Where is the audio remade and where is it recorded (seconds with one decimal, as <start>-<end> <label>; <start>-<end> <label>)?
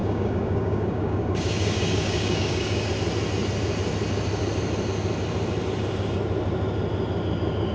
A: 0.0-2.9 remade; 2.9-7.7 recorded